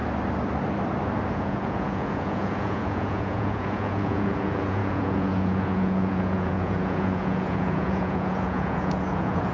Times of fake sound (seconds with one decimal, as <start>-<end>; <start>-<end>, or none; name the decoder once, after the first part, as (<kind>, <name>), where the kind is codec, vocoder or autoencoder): 1.3-9.5 (vocoder, Vocos)